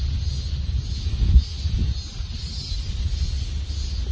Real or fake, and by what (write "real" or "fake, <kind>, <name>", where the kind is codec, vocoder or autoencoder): real